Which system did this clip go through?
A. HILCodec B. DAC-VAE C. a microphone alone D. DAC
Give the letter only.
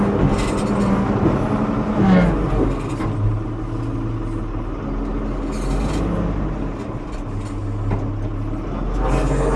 C